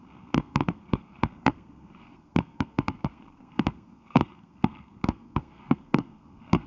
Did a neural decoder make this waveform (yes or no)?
yes